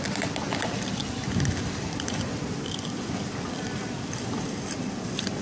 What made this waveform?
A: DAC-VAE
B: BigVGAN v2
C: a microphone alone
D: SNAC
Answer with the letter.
C